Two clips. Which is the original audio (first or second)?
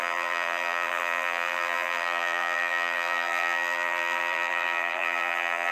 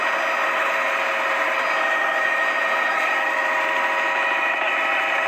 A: second